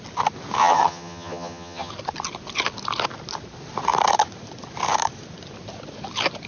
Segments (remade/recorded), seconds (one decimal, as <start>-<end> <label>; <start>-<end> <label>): 0.0-0.6 recorded; 0.6-1.9 remade; 1.9-6.5 recorded